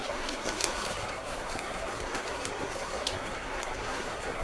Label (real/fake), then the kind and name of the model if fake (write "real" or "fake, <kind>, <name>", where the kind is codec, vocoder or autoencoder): fake, codec, SNAC